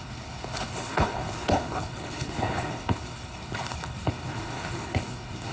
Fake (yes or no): yes